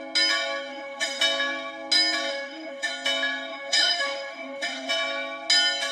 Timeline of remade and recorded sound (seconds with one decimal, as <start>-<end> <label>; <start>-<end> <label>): 0.0-0.7 recorded; 0.7-1.2 remade; 1.2-2.3 recorded; 2.3-2.9 remade; 2.9-3.5 recorded; 3.5-4.9 remade; 4.9-5.9 recorded